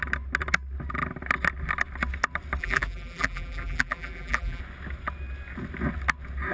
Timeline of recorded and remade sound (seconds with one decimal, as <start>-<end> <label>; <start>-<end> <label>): 0.0-2.6 recorded; 2.6-4.6 remade; 4.6-6.5 recorded